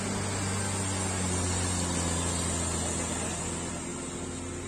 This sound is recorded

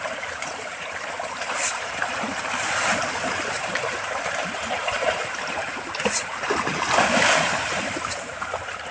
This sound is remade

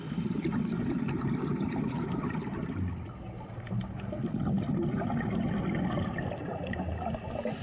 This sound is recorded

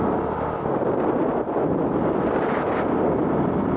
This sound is remade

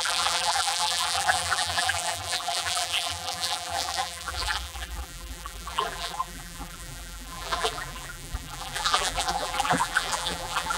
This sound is remade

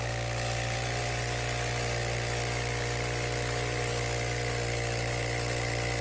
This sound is recorded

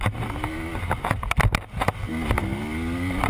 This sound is recorded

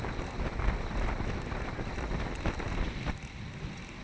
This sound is recorded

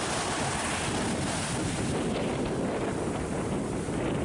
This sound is recorded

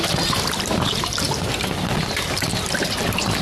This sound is remade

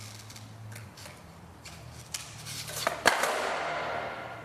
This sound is remade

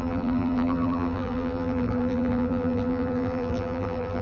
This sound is remade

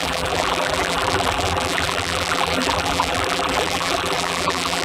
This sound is remade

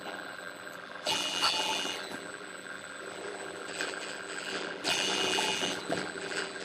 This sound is remade